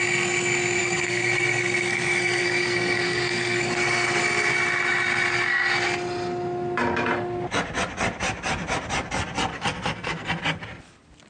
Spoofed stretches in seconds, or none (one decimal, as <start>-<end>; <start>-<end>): 0.8-4.2; 9.5-10.4